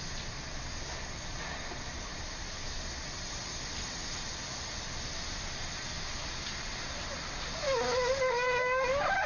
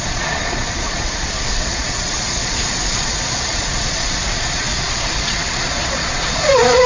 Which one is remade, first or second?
second